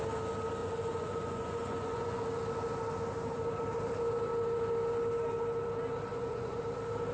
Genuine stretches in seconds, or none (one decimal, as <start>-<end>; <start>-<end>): 0.0-0.6; 2.2-6.1; 6.6-7.1